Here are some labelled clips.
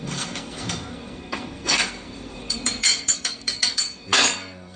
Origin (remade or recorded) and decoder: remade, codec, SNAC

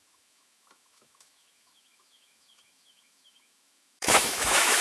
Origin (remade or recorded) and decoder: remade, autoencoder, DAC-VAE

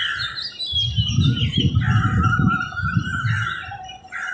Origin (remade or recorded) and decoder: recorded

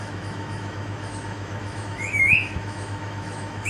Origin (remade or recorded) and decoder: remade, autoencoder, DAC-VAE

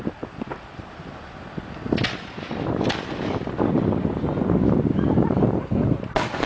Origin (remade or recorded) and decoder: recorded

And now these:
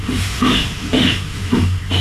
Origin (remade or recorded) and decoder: remade, autoencoder, DAC-VAE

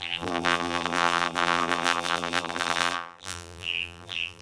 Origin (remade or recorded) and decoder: remade, vocoder, BigVGAN v2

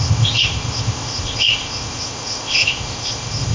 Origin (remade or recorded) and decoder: remade, codec, ZipCodec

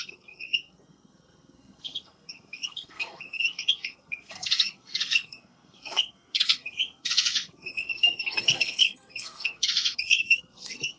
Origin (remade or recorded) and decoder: remade, codec, SNAC